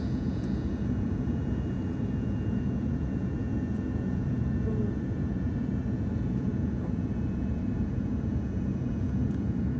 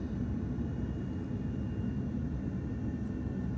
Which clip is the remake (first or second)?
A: first